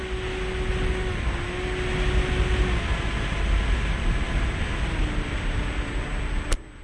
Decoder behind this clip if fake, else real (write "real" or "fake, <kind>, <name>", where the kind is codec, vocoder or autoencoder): real